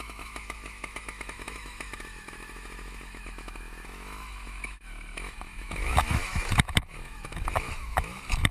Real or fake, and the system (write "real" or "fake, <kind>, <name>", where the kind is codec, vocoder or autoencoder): fake, autoencoder, DAC-VAE